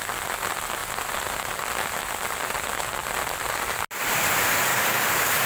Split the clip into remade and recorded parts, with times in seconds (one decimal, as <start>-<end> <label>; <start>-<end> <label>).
0.0-4.7 recorded; 4.7-5.5 remade